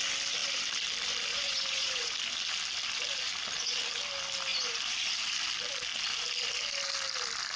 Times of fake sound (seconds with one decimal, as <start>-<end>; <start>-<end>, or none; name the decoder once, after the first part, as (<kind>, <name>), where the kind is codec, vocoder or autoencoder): 1.3-2.1 (vocoder, Vocos)

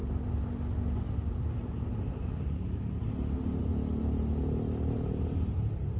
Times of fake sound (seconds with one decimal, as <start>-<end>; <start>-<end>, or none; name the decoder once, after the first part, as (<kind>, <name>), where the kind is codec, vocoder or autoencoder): none